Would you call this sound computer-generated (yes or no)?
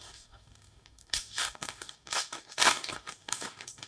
yes